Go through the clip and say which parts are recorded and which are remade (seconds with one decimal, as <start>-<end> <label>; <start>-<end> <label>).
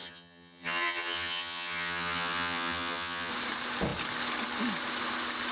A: 0.0-3.3 remade; 3.3-5.5 recorded